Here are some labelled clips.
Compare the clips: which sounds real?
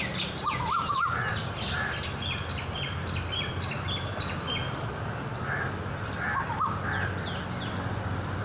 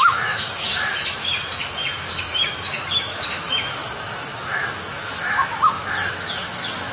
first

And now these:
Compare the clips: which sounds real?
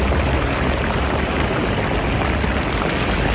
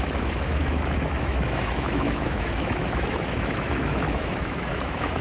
first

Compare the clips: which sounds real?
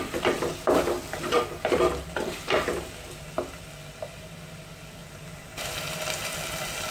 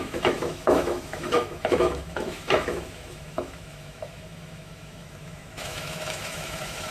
first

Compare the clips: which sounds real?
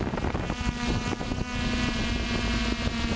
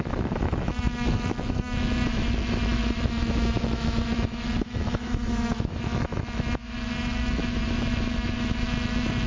first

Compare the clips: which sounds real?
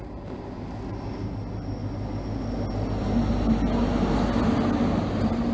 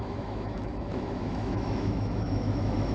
first